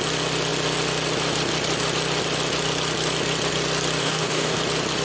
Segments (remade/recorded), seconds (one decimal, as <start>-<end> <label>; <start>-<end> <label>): 0.0-4.0 recorded; 4.0-4.6 remade; 4.6-5.0 recorded